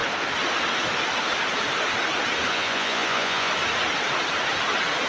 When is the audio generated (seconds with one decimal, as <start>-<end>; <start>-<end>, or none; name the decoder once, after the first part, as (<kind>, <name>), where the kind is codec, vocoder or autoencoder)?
2.5-3.5 (vocoder, Vocos)